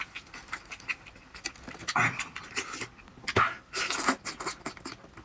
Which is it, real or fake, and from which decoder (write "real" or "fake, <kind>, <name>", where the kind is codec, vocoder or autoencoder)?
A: real